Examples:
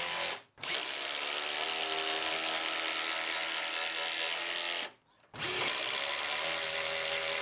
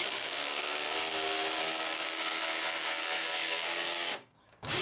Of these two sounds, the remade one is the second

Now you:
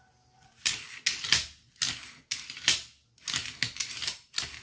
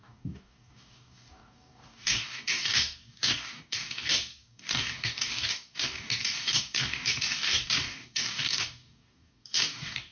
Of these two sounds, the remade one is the second